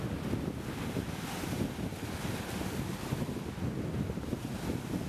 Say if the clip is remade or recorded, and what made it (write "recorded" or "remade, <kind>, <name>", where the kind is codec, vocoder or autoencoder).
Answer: recorded